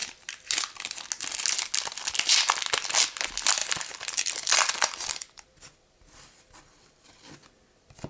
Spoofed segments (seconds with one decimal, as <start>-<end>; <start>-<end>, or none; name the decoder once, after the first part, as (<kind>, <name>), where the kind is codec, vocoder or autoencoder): 3.6-8.1 (vocoder, BigVGAN v2)